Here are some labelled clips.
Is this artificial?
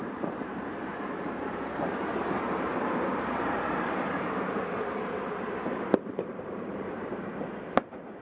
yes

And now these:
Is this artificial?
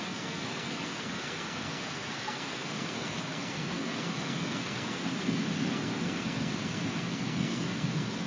yes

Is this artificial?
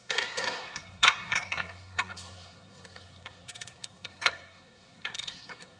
yes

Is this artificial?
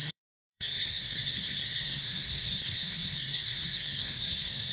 yes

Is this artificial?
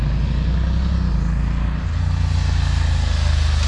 no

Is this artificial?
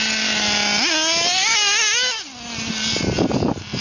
no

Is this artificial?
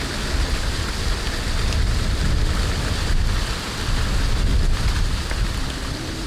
no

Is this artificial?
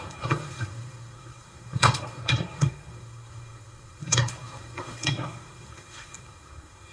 yes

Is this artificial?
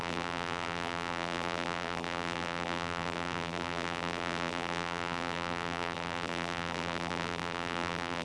yes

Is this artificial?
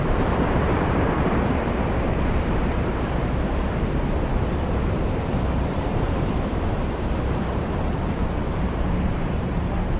yes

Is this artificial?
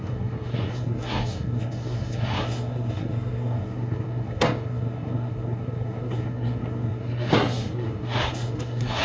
yes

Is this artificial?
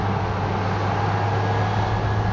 no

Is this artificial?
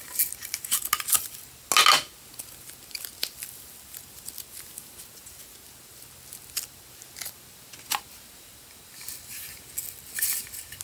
no